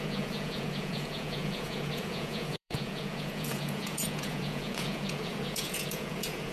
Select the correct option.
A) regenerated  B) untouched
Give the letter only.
A